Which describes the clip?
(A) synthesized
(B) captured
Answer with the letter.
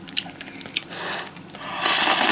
B